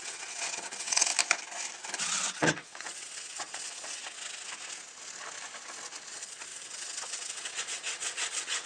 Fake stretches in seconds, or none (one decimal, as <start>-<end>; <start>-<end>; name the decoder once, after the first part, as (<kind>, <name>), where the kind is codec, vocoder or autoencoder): 0.0-1.1 (vocoder, WaveNeXt); 2.0-4.0; 6.1-8.7